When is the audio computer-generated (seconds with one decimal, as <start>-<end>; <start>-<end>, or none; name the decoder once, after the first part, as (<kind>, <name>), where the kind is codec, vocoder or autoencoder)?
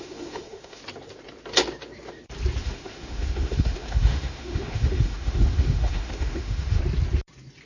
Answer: 0.0-0.8 (autoencoder, DAC-VAE); 2.6-6.8